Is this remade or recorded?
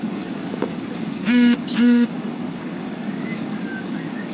remade